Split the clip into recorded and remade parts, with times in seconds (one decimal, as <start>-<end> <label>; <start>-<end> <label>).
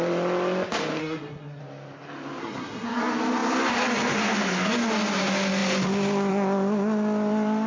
0.0-1.0 recorded; 1.0-1.6 remade; 1.6-2.4 recorded; 2.4-3.0 remade; 3.0-7.7 recorded